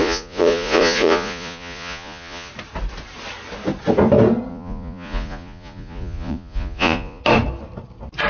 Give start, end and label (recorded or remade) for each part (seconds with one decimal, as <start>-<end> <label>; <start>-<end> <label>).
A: 0.0-2.5 remade; 2.5-4.5 recorded; 4.5-7.2 remade; 7.2-8.3 recorded